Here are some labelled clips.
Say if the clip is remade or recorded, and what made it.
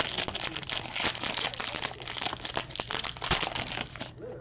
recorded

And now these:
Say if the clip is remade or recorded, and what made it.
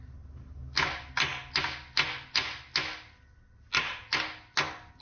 recorded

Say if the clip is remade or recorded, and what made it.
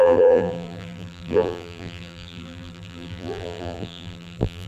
remade, vocoder, BigVGAN v2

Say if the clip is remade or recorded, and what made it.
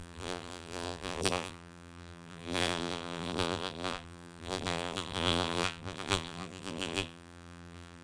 remade, vocoder, BigVGAN v2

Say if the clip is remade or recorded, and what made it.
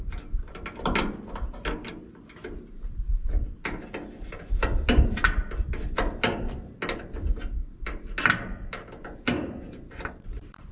recorded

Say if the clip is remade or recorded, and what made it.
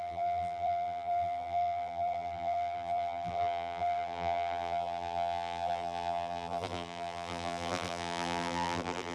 remade, vocoder, BigVGAN v2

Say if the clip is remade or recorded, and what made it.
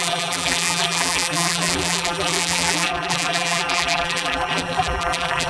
remade, vocoder, BigVGAN v2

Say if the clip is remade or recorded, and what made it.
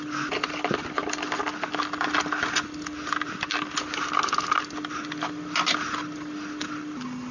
recorded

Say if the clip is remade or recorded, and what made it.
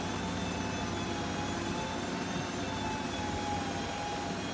recorded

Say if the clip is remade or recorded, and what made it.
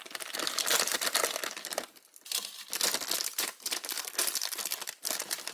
recorded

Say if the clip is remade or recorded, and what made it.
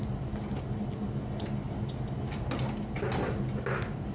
recorded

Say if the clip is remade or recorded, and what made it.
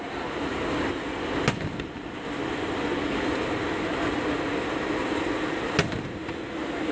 recorded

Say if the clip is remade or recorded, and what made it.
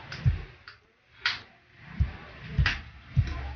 remade, vocoder, BigVGAN v2